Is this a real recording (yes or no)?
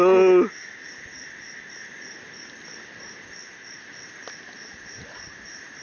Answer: yes